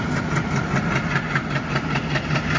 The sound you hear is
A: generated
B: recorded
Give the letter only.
B